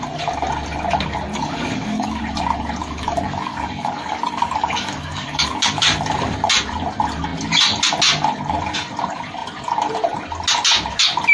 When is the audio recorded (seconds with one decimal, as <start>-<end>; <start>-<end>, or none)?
0.0-1.3; 2.2-2.8; 5.8-11.3